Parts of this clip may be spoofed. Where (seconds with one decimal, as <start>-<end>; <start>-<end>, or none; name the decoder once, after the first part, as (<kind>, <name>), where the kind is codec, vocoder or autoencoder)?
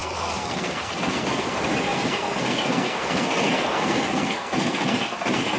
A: 0.0-5.6 (codec, SNAC)